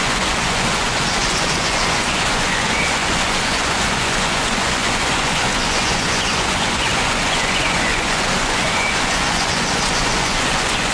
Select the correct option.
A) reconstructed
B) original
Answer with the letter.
A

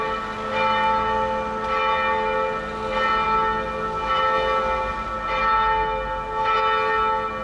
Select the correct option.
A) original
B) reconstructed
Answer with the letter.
A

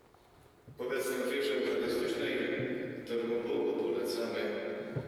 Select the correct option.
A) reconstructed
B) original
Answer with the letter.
B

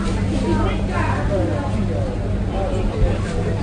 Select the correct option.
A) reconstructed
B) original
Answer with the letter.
B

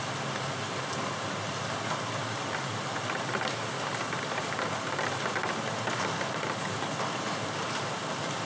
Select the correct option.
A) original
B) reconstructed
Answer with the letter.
A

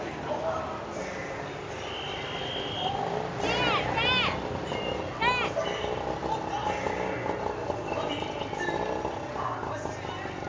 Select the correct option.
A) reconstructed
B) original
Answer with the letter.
B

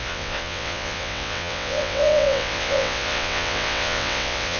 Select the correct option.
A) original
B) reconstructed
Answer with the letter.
B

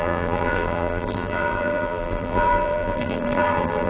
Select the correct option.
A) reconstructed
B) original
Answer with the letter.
A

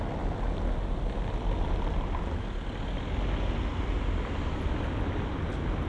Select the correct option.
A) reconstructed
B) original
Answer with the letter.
B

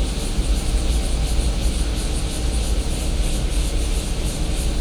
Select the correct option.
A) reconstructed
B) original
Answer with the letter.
B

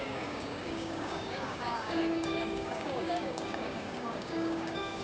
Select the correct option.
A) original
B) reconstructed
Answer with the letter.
B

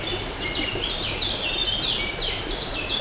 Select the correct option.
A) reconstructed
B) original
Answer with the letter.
B